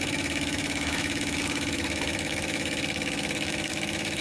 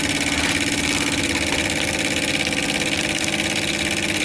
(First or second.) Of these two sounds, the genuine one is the second